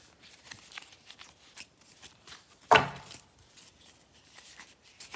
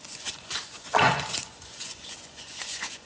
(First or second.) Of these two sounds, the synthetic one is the second